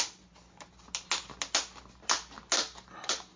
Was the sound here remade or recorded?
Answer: recorded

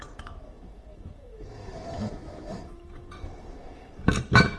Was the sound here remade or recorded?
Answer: remade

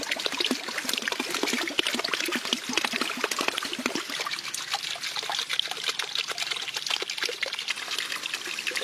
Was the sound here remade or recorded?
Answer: recorded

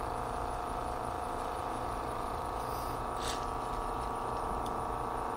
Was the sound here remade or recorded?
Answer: remade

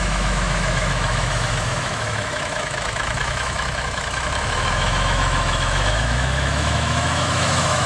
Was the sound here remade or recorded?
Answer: remade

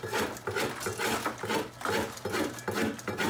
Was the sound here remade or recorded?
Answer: recorded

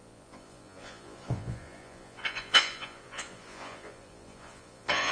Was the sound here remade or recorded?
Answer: remade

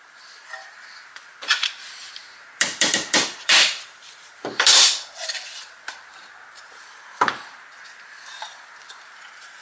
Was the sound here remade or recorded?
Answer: remade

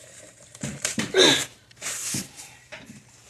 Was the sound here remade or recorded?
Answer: remade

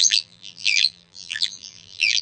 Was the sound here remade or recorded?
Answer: remade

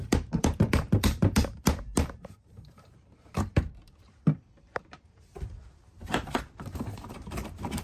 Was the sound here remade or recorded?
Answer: remade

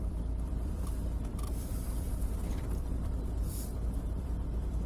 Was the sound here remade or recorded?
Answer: remade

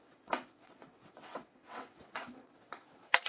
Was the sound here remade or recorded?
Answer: remade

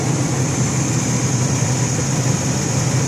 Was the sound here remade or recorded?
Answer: recorded